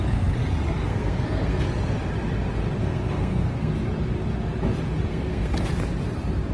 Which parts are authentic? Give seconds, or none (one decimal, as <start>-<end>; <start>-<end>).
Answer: 0.0-0.8; 1.6-2.8; 3.7-5.1; 5.7-6.5